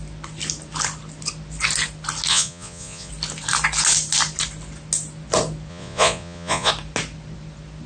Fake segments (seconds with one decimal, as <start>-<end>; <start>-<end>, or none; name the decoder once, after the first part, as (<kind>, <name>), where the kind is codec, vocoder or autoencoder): 2.3-3.1 (vocoder, Vocos); 5.7-6.7